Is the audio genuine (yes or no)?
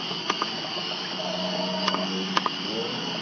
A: no